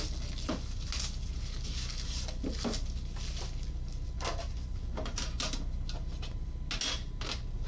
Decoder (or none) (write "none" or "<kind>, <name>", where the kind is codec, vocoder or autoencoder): none